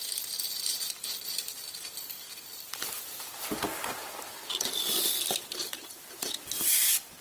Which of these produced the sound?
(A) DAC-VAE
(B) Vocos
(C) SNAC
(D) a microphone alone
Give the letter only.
D